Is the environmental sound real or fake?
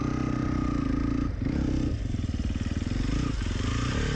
real